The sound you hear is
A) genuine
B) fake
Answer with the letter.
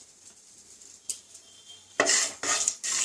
A